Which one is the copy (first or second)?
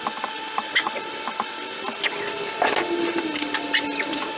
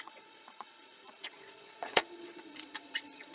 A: second